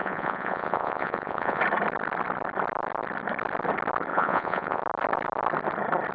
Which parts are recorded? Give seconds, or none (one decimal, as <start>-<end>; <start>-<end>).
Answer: 1.6-4.1; 4.8-6.1